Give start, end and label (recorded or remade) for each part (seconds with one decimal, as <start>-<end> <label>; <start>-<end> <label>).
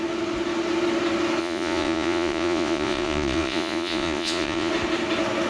0.0-1.4 recorded; 1.4-4.7 remade; 4.7-5.5 recorded